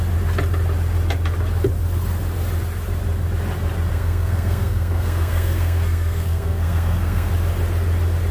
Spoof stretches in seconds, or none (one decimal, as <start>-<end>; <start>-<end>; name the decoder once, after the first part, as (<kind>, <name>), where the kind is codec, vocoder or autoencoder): 3.9-7.3 (codec, SNAC)